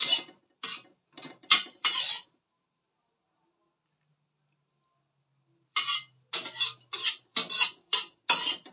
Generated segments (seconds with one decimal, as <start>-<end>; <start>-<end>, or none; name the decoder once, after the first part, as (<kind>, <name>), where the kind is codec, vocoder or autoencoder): 1.4-3.1 (vocoder, BigVGAN v2); 7.3-8.1